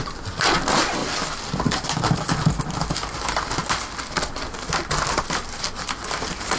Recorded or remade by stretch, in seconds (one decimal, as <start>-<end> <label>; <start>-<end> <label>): 0.0-6.6 recorded